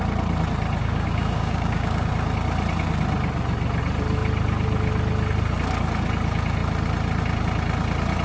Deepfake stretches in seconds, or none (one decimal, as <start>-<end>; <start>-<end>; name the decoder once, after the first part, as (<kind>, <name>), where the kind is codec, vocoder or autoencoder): 0.8-2.1 (codec, DAC)